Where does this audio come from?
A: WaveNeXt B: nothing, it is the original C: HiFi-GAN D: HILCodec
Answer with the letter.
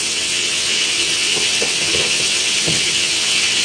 A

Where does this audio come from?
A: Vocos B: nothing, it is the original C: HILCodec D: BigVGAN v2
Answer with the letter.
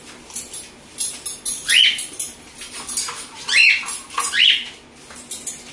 B